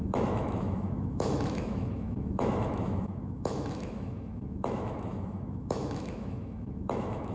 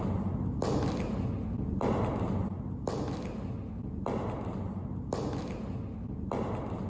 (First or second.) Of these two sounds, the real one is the second